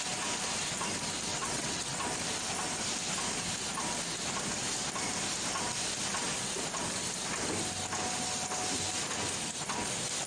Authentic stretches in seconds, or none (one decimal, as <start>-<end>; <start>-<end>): 0.0-1.3; 2.0-10.3